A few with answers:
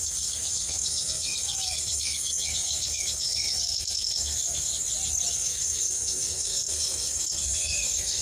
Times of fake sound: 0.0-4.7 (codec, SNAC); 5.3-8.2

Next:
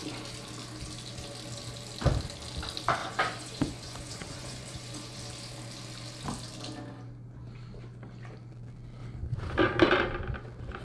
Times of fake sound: 3.0-5.2 (vocoder, Vocos)